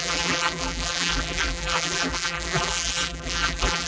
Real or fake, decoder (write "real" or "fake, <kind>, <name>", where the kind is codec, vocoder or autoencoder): fake, vocoder, BigVGAN v2